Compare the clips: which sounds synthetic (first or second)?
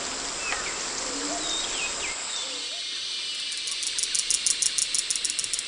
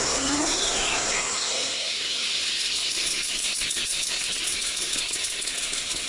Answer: second